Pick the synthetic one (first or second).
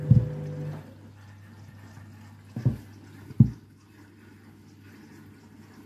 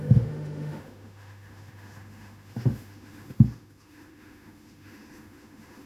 second